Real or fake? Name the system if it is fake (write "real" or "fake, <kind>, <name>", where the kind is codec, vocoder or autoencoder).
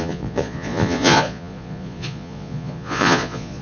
fake, vocoder, Vocos